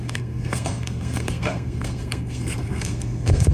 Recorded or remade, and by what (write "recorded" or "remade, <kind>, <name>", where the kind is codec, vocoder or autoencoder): remade, codec, SNAC